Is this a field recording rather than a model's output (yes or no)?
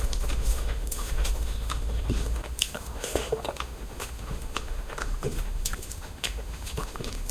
no